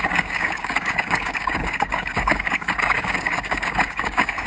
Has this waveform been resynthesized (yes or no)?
yes